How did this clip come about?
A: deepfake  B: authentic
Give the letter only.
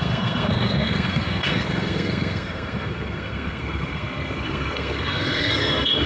A